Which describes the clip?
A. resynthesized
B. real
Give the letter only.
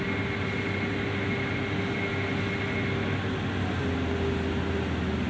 B